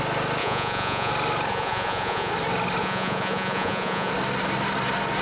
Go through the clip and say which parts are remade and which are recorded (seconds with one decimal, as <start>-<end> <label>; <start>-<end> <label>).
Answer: 0.0-0.4 recorded; 0.4-1.1 remade; 1.1-1.5 recorded; 1.5-2.3 remade; 2.3-2.8 recorded; 2.8-4.1 remade; 4.1-5.2 recorded